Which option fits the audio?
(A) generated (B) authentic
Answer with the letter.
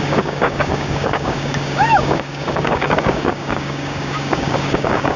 A